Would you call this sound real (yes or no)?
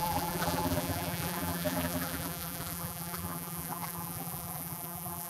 no